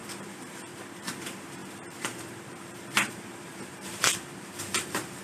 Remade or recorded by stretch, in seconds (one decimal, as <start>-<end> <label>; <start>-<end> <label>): 0.0-5.2 remade